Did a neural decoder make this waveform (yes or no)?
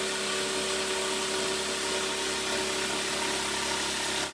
no